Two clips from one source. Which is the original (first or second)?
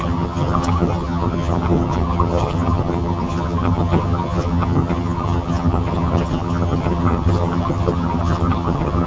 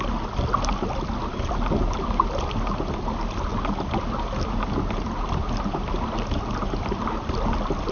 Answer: second